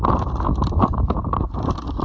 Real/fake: real